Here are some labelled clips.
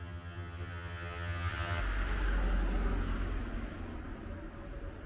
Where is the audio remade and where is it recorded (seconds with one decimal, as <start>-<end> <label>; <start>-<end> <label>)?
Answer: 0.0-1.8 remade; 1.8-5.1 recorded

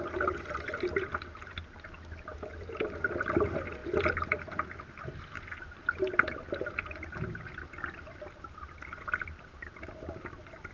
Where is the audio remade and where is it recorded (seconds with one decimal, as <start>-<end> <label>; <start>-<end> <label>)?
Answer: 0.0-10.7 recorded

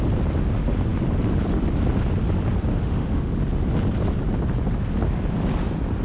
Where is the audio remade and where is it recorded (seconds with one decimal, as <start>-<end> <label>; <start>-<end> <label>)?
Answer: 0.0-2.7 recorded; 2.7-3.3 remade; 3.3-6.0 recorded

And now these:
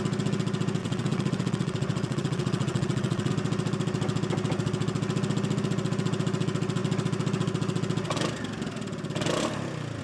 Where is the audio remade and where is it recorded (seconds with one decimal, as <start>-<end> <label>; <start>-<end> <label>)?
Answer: 0.0-0.8 recorded; 0.8-3.3 remade; 3.3-10.0 recorded

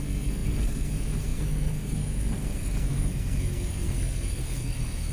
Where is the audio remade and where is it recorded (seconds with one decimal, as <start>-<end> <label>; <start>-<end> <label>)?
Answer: 0.0-5.1 remade

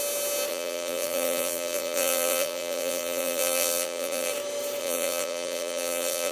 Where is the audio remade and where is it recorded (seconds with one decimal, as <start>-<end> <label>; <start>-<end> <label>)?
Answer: 0.0-0.5 recorded; 0.5-4.3 remade; 4.3-4.8 recorded; 4.8-6.3 remade